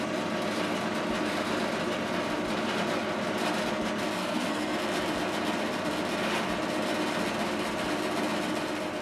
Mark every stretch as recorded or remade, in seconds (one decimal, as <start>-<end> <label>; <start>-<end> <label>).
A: 0.0-4.2 recorded; 4.2-4.8 remade; 4.8-9.0 recorded